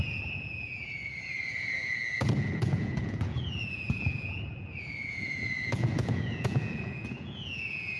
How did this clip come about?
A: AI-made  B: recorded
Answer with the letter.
A